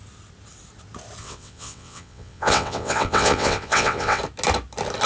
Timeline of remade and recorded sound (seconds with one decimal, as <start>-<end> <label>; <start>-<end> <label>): 0.0-1.2 recorded; 1.2-4.2 remade; 4.2-5.1 recorded